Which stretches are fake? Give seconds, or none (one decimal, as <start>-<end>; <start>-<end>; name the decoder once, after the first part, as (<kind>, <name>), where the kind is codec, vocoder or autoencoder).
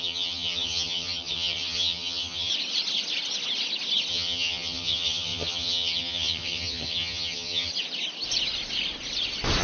0.0-2.5 (vocoder, HiFi-GAN); 4.1-7.7